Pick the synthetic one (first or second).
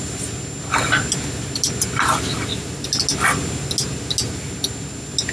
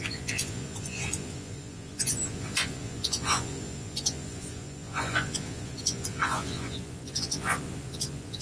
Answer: second